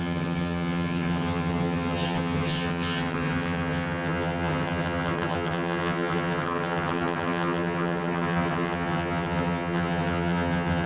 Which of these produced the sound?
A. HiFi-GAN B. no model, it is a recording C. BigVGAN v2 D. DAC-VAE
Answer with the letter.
A